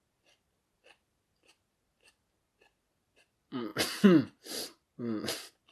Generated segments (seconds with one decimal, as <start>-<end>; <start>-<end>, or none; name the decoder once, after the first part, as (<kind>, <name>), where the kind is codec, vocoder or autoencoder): none